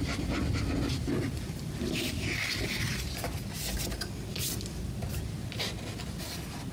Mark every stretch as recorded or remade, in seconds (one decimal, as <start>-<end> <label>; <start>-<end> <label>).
0.0-0.9 recorded; 0.9-2.1 remade; 2.1-2.9 recorded; 2.9-3.8 remade; 3.8-4.3 recorded; 4.3-4.8 remade; 4.8-6.7 recorded